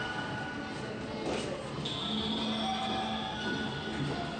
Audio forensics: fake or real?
real